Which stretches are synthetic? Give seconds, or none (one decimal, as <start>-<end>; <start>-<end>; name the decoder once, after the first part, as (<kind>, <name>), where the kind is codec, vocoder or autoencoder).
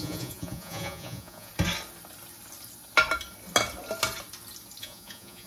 0.0-1.5 (vocoder, Vocos); 4.8-5.5